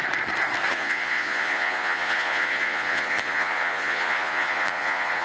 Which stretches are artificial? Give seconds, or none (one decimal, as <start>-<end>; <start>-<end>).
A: 0.7-5.2